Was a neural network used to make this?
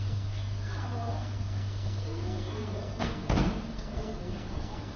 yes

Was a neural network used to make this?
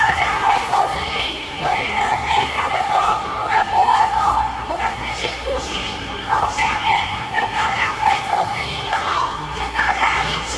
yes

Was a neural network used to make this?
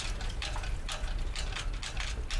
no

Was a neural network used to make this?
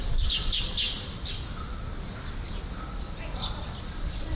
no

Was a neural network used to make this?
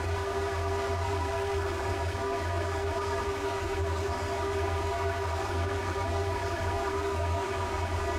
yes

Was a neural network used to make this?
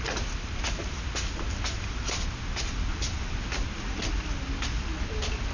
no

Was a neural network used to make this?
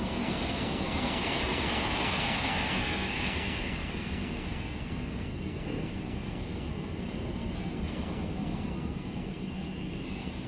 yes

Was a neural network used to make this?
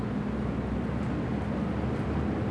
no